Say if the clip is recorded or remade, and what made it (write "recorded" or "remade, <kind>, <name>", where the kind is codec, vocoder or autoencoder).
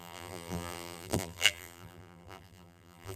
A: remade, vocoder, BigVGAN v2